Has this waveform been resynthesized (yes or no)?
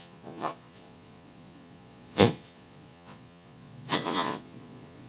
yes